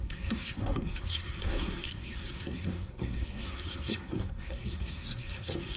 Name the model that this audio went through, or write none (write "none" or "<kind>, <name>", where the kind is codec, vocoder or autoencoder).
codec, SNAC